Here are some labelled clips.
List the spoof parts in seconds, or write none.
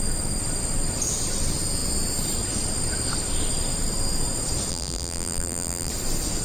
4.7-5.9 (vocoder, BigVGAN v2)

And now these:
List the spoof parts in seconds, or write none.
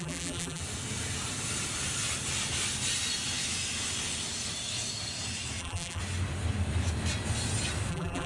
0.0-0.6 (vocoder, BigVGAN v2); 5.6-6.0; 7.9-8.3